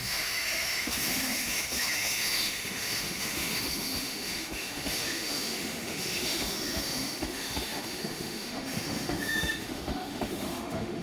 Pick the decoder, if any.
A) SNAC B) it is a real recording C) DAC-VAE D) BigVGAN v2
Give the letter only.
C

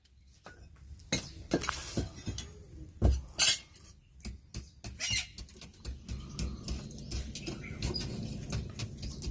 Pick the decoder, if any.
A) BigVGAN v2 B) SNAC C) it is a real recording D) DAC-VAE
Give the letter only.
C